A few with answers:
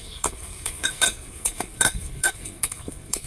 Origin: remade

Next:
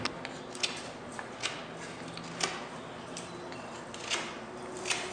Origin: recorded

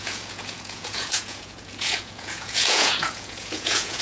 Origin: remade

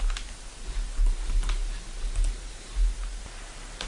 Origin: recorded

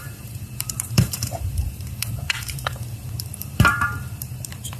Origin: remade